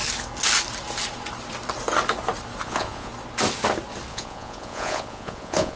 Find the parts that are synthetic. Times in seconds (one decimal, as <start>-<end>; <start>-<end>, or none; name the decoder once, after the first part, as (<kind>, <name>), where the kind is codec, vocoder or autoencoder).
2.6-3.1 (vocoder, Vocos); 4.1-5.8